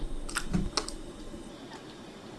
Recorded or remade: recorded